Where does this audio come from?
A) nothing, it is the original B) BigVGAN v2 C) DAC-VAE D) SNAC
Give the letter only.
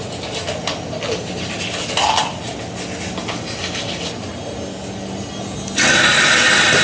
A